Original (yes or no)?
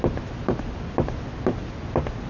yes